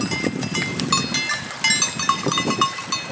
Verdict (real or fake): real